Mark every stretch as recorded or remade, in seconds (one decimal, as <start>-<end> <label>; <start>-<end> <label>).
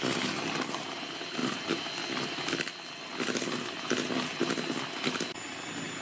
0.0-6.0 recorded